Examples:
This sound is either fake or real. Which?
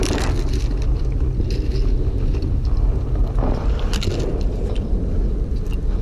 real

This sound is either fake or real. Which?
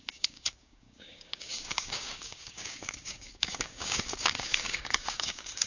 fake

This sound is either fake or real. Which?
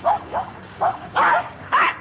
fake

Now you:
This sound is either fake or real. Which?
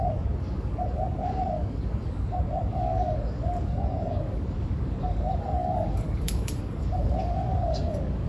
fake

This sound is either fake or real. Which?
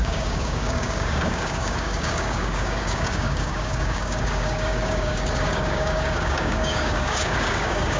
fake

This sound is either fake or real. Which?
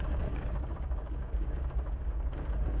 fake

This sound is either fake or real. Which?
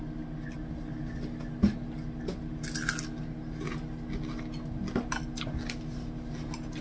real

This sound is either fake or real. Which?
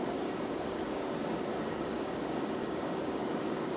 fake